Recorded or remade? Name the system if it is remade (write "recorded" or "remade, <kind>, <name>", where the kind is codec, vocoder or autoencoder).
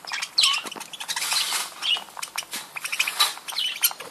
recorded